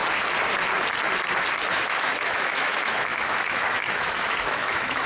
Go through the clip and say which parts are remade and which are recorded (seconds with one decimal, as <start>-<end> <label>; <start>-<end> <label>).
0.0-1.7 recorded; 1.7-5.1 remade